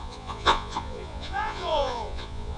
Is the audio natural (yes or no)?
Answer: no